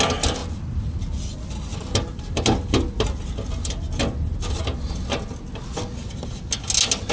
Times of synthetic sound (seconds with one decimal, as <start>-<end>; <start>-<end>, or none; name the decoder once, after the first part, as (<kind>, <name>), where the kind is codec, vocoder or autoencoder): none